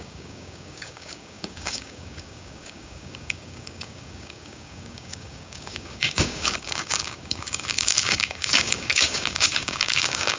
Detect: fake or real fake